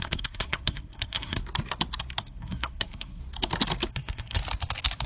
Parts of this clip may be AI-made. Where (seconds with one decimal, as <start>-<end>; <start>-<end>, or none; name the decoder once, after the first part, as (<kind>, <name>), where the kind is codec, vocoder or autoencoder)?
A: 0.0-1.4 (codec, SNAC); 2.2-3.2; 3.9-4.4

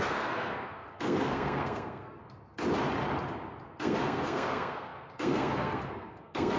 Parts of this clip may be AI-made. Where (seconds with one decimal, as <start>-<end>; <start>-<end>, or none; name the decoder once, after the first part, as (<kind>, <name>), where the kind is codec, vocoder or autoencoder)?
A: 0.0-2.2 (codec, SNAC); 3.8-6.6

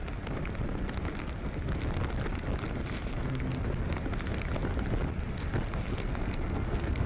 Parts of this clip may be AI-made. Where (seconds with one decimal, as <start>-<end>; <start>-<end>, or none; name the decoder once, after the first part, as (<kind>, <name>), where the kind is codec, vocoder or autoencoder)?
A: 5.9-7.1 (codec, SNAC)

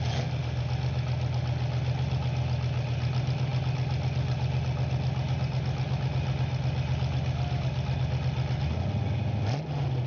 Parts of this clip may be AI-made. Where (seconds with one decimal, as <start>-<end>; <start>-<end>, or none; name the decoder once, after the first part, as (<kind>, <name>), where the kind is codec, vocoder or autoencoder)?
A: none